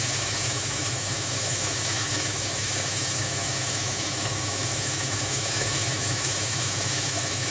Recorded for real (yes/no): no